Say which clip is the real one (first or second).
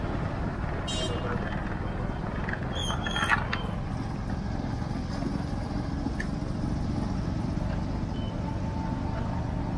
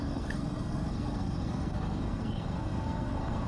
first